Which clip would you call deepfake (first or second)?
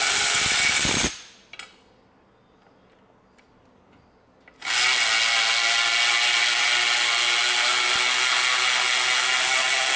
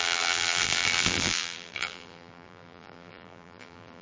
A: second